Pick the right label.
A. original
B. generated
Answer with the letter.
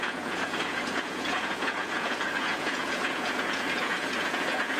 B